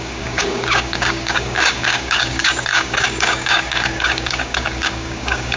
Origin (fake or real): fake